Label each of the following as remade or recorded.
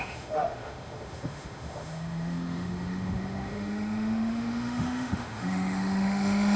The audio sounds remade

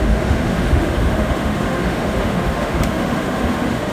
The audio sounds remade